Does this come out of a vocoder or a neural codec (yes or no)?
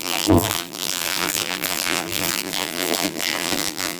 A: yes